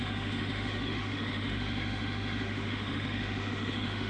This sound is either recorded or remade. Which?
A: remade